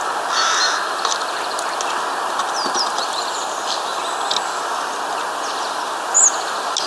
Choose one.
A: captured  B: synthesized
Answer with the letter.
A